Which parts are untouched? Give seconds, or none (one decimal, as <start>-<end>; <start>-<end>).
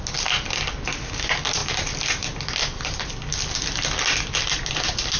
0.0-5.2